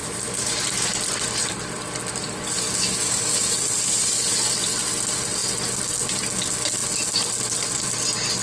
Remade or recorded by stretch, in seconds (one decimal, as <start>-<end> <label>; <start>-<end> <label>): 0.0-1.0 remade; 1.0-8.4 recorded